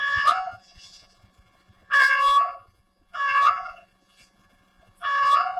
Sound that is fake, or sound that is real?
fake